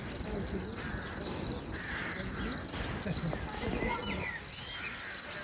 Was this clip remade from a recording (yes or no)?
no